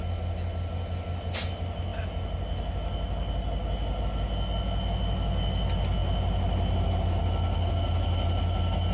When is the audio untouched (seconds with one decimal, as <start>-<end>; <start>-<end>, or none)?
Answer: 0.0-8.9

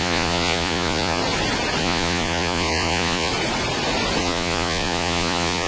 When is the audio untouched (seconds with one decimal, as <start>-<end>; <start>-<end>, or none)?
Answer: 1.2-1.8; 3.3-4.2

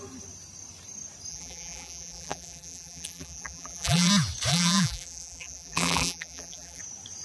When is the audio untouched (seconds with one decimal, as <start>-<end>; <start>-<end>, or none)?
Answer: 0.0-1.3; 4.1-4.5; 6.8-7.2